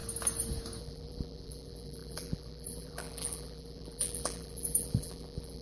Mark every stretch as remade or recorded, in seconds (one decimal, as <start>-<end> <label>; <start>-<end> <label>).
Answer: 0.0-0.8 recorded; 0.8-5.6 remade